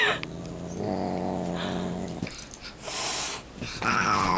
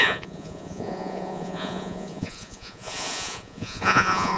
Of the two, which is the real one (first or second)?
first